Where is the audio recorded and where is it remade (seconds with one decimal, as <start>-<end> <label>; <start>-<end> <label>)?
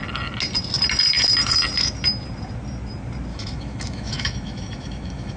0.0-3.3 recorded; 3.3-5.4 remade